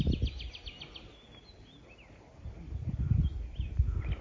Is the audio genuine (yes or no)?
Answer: yes